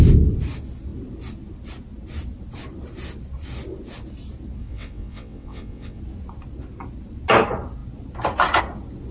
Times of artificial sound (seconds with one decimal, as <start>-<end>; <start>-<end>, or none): 4.6-6.0